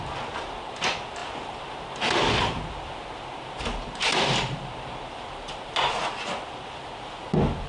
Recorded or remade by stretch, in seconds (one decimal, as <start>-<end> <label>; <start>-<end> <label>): 0.0-7.7 recorded